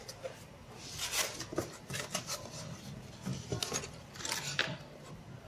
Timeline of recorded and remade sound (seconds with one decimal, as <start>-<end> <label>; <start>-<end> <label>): 0.0-5.5 recorded